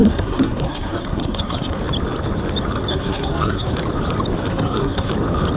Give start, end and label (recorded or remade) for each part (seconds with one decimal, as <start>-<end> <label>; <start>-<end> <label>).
0.0-1.8 remade; 1.8-2.9 recorded; 2.9-3.7 remade; 3.7-4.5 recorded; 4.5-5.1 remade; 5.1-5.6 recorded